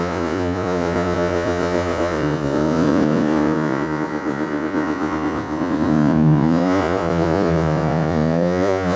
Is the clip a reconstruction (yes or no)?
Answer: yes